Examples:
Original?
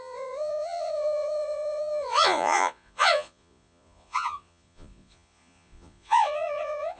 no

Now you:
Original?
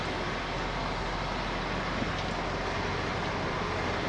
yes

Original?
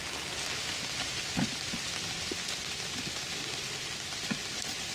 yes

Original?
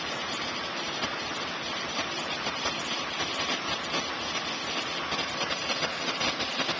yes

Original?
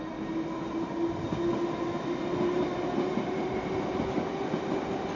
yes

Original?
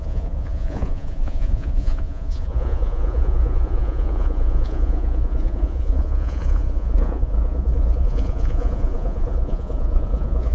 no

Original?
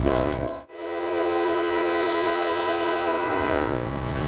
no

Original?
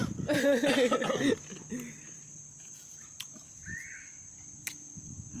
yes